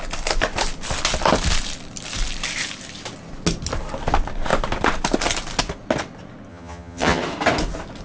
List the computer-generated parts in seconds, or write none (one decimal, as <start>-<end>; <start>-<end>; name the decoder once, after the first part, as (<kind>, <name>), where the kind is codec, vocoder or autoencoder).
6.5-7.2 (vocoder, HiFi-GAN)